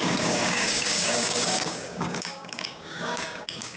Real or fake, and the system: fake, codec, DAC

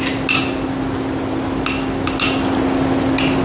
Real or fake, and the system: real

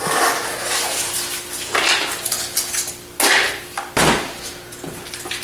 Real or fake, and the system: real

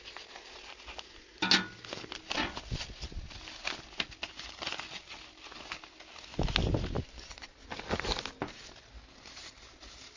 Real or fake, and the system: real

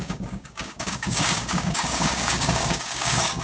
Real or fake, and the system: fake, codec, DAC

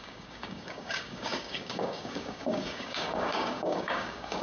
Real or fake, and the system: fake, codec, DAC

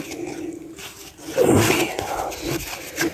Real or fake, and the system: real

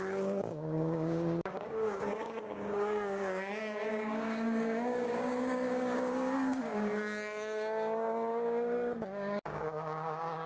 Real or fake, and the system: fake, codec, DAC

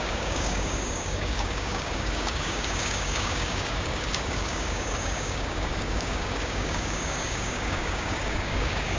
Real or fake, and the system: fake, codec, DAC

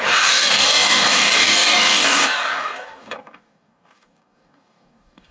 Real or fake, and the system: fake, codec, DAC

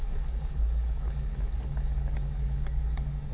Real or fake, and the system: fake, codec, DAC